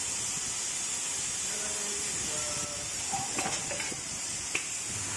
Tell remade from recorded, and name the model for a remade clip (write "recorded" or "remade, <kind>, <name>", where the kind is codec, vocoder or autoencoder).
recorded